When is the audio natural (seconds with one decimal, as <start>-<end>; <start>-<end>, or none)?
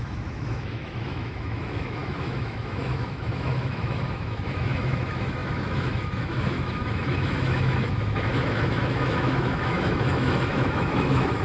none